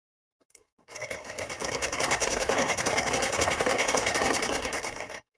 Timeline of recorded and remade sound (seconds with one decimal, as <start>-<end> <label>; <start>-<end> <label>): 0.0-5.4 remade